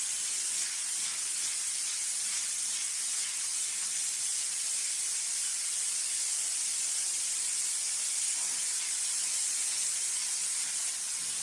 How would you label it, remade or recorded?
remade